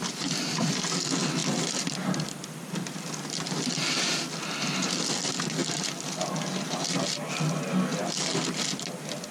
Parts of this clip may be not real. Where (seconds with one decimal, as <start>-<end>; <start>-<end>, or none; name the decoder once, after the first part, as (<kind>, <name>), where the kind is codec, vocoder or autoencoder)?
none